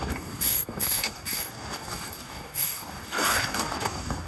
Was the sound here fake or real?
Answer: fake